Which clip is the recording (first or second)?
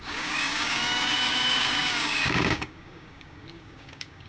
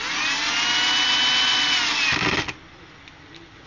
second